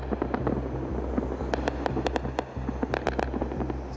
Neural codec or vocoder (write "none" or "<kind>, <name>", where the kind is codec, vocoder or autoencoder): none